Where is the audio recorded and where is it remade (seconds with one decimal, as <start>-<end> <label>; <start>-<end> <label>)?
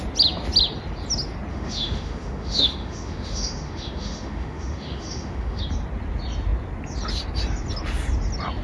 0.0-1.5 recorded; 1.5-5.6 remade; 5.6-8.6 recorded